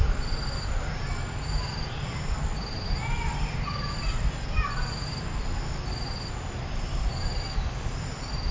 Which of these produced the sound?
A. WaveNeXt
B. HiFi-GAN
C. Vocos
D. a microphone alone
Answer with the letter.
D